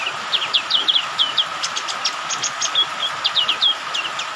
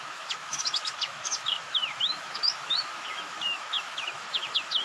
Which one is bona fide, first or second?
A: first